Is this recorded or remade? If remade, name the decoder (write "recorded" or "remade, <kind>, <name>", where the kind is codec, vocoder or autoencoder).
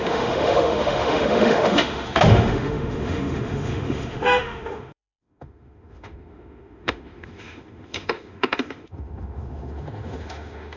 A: remade, autoencoder, DAC-VAE